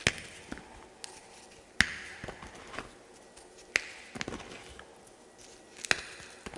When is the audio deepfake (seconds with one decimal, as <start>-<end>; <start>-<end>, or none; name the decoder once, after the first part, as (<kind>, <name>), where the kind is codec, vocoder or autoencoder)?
none